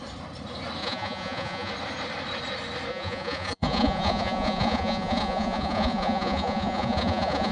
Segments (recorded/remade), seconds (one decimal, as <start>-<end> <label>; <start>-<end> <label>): 0.0-0.8 recorded; 0.8-1.7 remade; 1.7-2.9 recorded; 2.9-7.5 remade